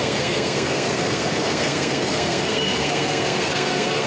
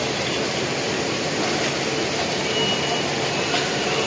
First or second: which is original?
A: second